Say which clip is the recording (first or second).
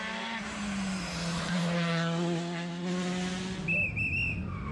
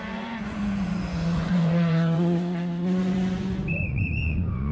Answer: first